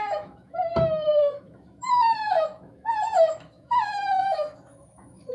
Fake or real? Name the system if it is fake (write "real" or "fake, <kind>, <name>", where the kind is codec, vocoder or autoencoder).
fake, autoencoder, DAC-VAE